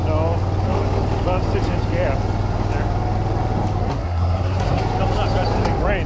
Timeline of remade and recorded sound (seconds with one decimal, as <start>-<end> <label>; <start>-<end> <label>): 0.0-3.9 recorded; 3.9-4.8 remade; 4.8-6.1 recorded